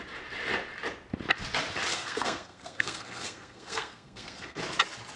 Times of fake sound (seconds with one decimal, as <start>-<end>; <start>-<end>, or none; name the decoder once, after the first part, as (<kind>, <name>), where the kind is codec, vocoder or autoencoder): 1.9-4.6 (codec, SNAC)